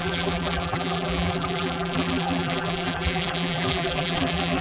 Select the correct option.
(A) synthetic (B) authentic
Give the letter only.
A